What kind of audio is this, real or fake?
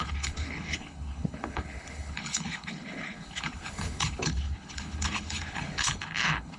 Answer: fake